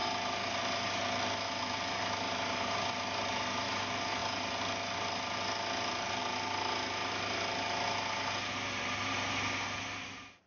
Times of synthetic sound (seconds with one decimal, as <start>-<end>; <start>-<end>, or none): none

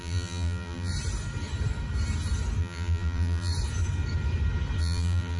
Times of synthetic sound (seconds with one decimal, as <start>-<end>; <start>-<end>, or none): 0.0-0.9; 2.6-3.5; 4.8-5.4

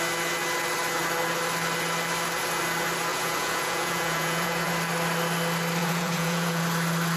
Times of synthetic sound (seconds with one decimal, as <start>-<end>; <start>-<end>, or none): 3.1-4.7; 5.8-6.6

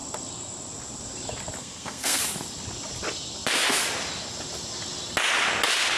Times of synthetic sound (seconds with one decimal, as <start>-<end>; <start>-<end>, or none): 1.6-2.2

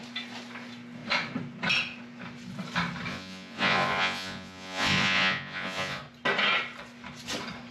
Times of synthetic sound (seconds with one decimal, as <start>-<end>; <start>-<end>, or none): 3.1-6.0

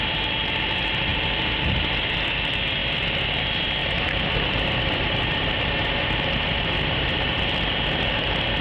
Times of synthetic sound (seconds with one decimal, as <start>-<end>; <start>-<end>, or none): 3.8-7.4

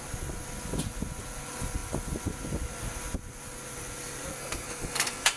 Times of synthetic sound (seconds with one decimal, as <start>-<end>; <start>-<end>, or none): 4.3-5.4